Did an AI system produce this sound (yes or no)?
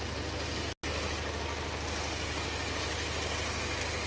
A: no